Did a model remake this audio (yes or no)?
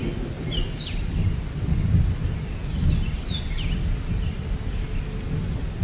no